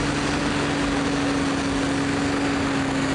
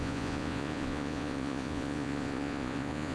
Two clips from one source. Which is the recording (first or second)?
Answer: first